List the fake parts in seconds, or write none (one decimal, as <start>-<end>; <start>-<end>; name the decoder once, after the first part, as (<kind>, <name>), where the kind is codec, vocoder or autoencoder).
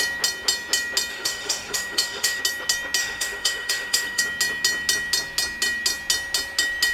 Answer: 1.1-2.4 (autoencoder, DAC-VAE); 3.0-4.2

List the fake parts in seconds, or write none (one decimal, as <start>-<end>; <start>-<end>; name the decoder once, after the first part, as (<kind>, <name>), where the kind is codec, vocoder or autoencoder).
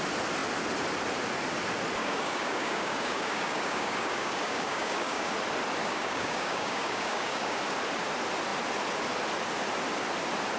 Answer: 2.0-5.3 (codec, DAC); 5.8-7.6